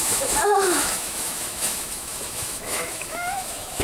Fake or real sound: fake